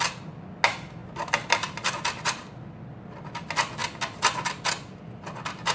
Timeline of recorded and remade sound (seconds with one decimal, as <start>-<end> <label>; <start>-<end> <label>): 0.0-5.7 recorded